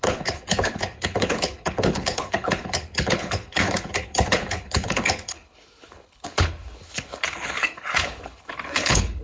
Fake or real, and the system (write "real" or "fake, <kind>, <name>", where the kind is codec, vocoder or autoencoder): fake, codec, HILCodec